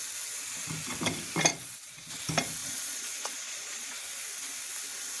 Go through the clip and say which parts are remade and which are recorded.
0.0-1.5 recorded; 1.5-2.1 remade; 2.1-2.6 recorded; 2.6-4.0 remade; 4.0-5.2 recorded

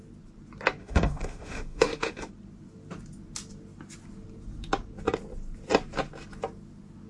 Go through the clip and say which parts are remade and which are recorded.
0.0-0.8 recorded; 0.8-2.3 remade; 2.3-7.1 recorded

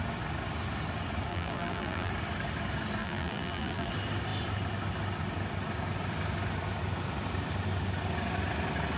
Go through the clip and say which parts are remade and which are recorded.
0.0-1.3 recorded; 1.3-2.1 remade; 2.1-3.0 recorded; 3.0-3.9 remade; 3.9-9.0 recorded